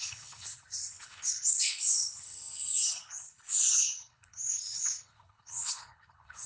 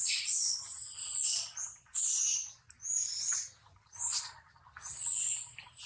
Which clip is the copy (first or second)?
first